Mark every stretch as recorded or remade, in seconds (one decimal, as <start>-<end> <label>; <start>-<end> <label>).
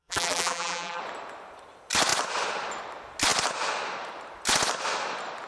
0.0-1.0 remade; 1.0-5.5 recorded